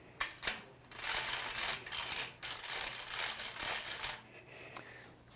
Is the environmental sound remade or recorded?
recorded